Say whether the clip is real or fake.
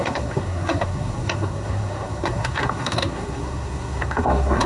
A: fake